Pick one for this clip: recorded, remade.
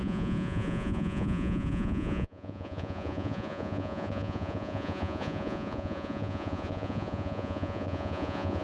remade